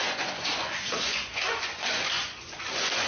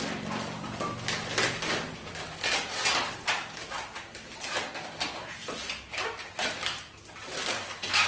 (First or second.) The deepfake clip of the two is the first